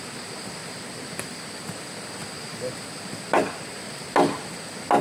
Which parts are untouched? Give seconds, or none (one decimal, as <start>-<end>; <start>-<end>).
0.0-5.0